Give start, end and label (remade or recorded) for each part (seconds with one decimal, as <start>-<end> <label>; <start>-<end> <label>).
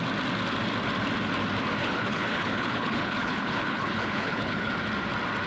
0.0-1.8 recorded; 1.8-4.7 remade; 4.7-5.5 recorded